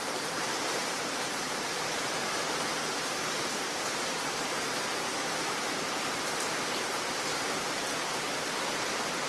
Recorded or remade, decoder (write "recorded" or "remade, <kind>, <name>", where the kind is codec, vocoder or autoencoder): remade, vocoder, BigVGAN v2